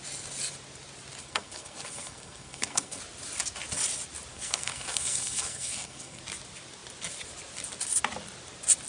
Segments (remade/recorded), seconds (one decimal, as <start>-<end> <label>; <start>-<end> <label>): 0.0-1.2 recorded; 1.2-3.0 remade; 3.0-4.3 recorded; 4.3-6.2 remade; 6.2-8.9 recorded